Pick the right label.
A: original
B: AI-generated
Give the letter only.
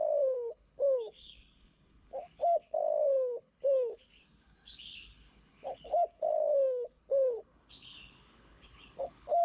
B